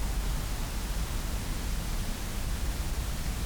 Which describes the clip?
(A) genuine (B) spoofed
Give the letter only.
A